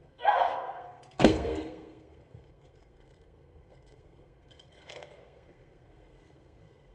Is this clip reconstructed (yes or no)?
yes